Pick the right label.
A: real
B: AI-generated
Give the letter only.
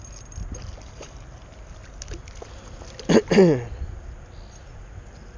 A